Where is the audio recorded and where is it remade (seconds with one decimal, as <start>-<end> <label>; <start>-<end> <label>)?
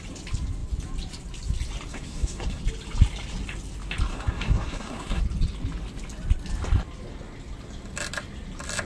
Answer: 0.0-1.9 recorded; 1.9-2.6 remade; 2.6-4.1 recorded; 4.1-5.2 remade; 5.2-8.9 recorded